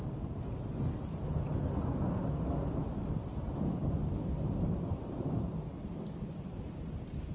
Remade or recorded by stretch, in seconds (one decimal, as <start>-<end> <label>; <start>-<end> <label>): 0.0-7.3 recorded